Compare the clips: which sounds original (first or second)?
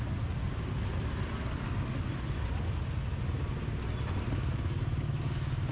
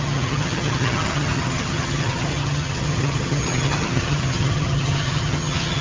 first